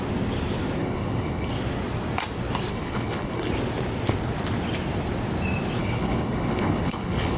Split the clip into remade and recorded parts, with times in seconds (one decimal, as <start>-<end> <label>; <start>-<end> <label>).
0.0-0.8 recorded; 0.8-1.5 remade; 1.5-2.7 recorded; 2.7-3.5 remade; 3.5-5.8 recorded; 5.8-7.4 remade